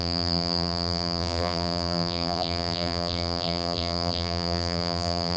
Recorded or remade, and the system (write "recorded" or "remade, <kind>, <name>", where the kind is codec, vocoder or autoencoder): remade, vocoder, BigVGAN v2